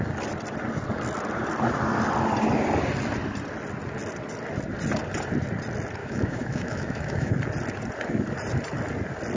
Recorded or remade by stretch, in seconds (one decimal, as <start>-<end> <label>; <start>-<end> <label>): 0.0-6.0 recorded; 6.0-7.3 remade; 7.3-9.4 recorded

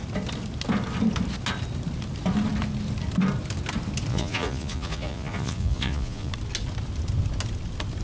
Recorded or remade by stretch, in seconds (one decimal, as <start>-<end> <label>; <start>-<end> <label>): 0.0-4.1 recorded; 4.1-6.3 remade; 6.3-8.0 recorded